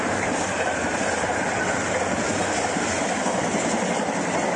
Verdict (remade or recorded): recorded